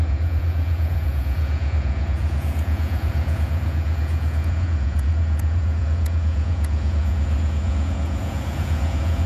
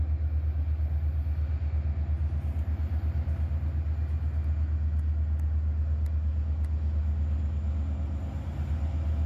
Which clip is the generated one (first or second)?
first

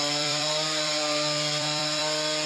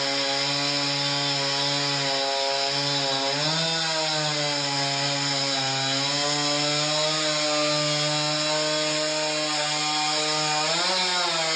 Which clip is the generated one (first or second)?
first